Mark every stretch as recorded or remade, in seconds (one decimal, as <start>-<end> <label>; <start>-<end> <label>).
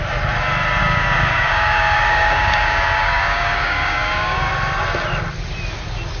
0.0-0.8 recorded; 0.8-4.5 remade; 4.5-6.2 recorded